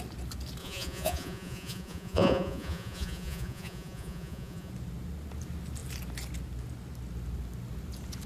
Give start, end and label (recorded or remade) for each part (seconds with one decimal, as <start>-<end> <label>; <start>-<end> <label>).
0.0-0.6 recorded; 0.6-4.7 remade; 4.7-8.3 recorded